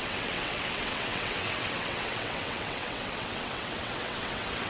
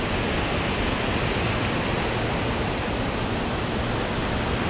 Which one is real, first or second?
second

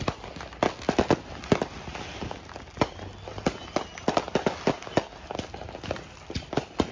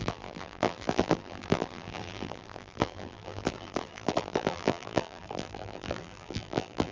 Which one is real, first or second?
first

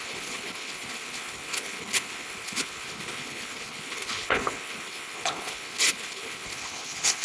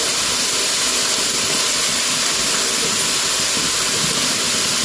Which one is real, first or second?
second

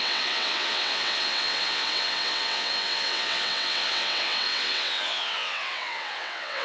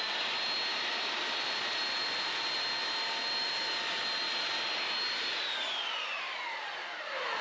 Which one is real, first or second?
second